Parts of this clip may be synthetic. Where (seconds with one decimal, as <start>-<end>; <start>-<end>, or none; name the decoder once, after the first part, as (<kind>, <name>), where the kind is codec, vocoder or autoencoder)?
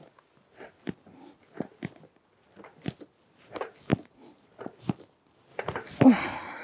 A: 5.5-6.0 (vocoder, BigVGAN v2)